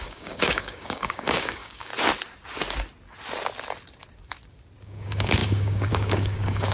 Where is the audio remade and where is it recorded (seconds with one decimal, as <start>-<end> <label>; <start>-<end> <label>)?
0.0-1.9 remade; 1.9-4.8 recorded; 4.8-6.7 remade